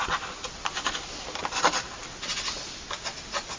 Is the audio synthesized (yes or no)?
no